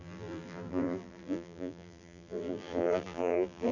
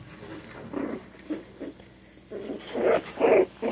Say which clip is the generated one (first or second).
first